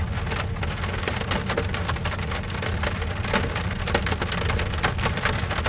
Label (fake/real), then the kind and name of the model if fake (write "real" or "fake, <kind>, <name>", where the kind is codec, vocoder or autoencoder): real